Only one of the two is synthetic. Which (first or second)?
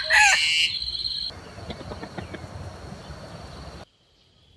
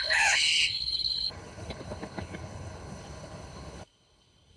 second